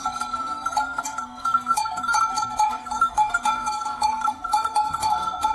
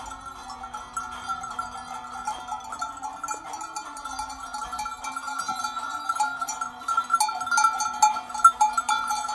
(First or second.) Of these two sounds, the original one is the second